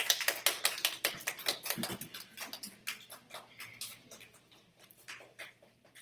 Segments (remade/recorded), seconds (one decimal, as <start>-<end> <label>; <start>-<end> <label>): 0.0-3.9 recorded; 3.9-6.0 remade